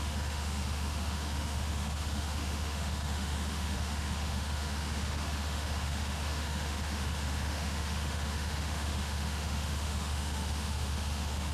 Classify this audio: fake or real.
fake